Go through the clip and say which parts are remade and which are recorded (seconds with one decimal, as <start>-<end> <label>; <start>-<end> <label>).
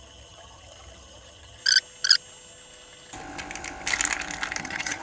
0.0-1.6 remade; 1.6-4.6 recorded; 4.6-5.0 remade